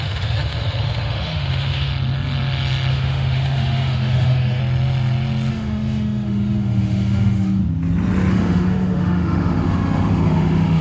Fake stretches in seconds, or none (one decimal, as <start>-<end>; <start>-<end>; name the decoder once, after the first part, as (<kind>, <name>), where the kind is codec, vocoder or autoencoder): 0.0-1.9 (autoencoder, DAC-VAE); 2.9-4.6; 5.5-7.6; 8.3-10.8